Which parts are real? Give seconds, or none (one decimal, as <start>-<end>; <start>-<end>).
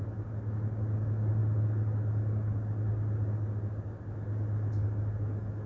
0.0-5.7